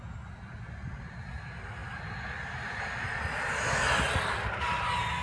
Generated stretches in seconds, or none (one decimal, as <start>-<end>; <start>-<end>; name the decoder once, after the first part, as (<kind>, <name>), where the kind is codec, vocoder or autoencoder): none